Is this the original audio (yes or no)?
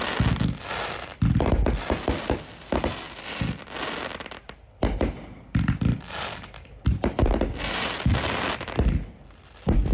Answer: yes